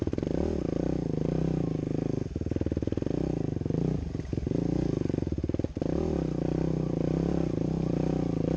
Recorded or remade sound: recorded